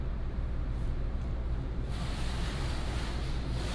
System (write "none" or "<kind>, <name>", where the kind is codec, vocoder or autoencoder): vocoder, BigVGAN v2